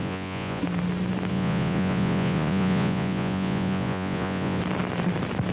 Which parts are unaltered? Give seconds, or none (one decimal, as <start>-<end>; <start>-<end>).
0.6-1.3; 4.6-5.5